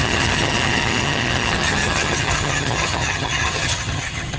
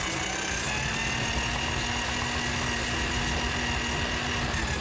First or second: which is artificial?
first